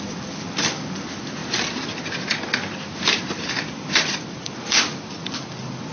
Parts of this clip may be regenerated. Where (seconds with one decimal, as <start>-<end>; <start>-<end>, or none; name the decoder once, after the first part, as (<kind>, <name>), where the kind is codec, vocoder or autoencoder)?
0.0-1.4 (vocoder, BigVGAN v2); 3.1-5.9

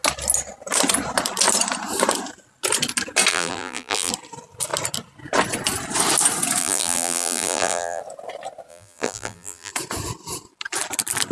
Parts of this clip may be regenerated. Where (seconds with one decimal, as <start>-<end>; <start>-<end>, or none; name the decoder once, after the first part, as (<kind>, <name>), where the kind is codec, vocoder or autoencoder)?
3.3-4.1 (vocoder, BigVGAN v2); 6.6-8.0; 8.7-9.7

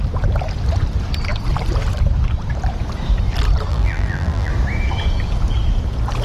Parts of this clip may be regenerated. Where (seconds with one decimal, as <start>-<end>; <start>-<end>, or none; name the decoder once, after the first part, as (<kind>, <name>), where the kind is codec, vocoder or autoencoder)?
3.7-4.5 (vocoder, BigVGAN v2)

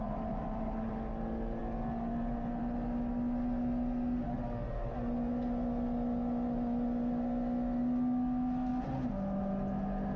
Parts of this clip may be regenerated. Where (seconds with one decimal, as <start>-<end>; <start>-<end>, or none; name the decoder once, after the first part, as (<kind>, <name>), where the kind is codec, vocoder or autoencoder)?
0.0-0.9 (vocoder, BigVGAN v2)

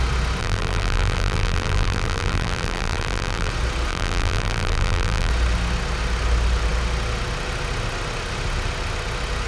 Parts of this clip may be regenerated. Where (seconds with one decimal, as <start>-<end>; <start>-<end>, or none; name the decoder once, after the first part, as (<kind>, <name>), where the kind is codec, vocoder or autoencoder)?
0.4-3.5 (vocoder, BigVGAN v2); 3.9-5.3

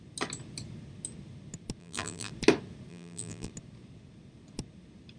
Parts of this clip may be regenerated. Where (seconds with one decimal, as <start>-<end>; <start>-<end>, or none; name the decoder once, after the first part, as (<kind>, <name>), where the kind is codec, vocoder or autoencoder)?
1.8-2.3 (vocoder, BigVGAN v2); 2.9-3.5

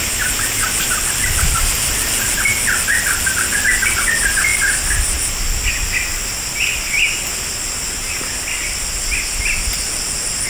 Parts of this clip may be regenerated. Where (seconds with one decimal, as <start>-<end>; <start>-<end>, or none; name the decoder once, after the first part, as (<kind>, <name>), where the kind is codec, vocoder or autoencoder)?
4.5-5.7 (vocoder, BigVGAN v2)